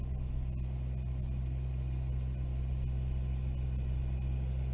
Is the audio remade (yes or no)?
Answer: no